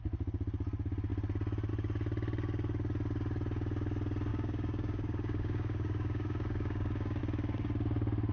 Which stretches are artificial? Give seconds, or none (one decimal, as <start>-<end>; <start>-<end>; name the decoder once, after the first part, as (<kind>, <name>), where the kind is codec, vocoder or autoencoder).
4.3-7.2 (codec, DAC)